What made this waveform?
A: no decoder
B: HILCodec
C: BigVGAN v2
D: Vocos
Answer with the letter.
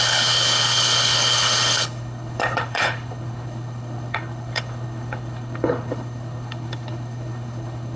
B